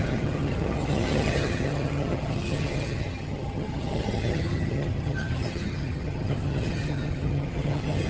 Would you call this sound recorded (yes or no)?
no